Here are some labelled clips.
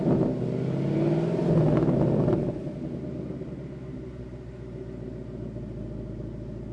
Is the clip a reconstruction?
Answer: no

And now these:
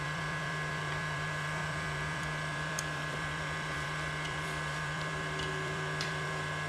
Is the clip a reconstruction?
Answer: yes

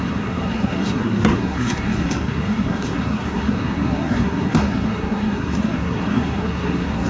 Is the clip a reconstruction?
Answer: yes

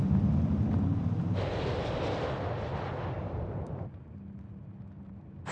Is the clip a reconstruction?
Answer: no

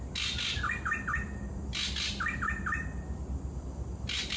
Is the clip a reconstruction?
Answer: no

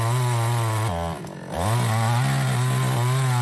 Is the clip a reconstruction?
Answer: no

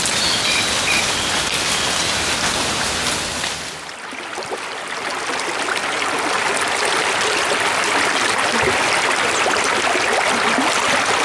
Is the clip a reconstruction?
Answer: no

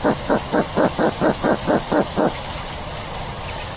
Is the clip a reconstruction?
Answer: yes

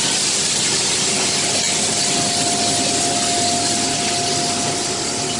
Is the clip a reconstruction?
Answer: no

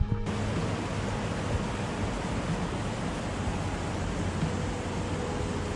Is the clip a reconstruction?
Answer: no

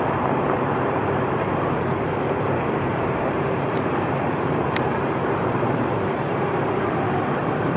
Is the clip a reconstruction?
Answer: yes